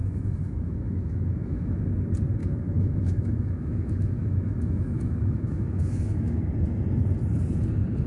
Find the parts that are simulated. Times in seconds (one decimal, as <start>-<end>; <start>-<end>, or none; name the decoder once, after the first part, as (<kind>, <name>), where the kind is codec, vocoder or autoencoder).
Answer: 0.0-1.8 (autoencoder, DAC-VAE); 2.4-6.4